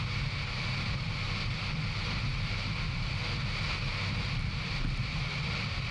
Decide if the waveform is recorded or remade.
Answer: recorded